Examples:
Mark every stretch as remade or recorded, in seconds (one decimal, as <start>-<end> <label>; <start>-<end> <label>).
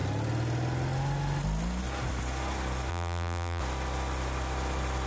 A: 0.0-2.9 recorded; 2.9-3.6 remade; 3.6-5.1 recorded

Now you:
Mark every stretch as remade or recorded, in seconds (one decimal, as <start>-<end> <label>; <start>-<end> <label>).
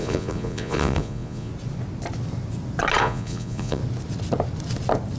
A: 0.0-1.5 remade; 1.5-3.0 recorded; 3.0-3.8 remade; 3.8-5.2 recorded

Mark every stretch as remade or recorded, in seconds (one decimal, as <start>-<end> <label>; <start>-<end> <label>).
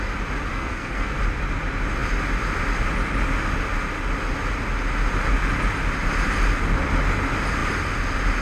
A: 0.0-0.5 recorded; 0.5-1.2 remade; 1.2-8.4 recorded